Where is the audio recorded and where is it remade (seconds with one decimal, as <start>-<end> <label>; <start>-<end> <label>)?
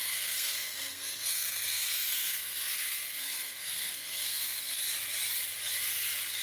0.0-4.8 remade; 4.8-6.4 recorded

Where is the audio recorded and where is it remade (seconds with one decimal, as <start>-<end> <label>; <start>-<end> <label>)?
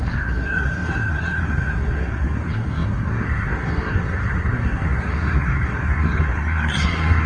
0.0-7.3 remade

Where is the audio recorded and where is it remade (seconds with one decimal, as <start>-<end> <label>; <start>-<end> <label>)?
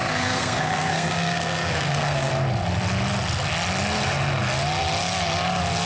0.0-2.3 remade; 2.3-5.9 recorded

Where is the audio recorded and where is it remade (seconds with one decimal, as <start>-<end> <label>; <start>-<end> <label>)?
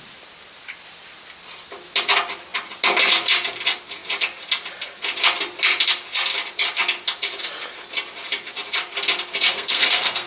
0.0-9.5 recorded; 9.5-10.3 remade